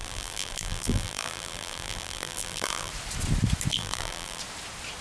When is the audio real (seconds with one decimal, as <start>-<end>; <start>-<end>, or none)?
2.9-3.7; 4.4-5.0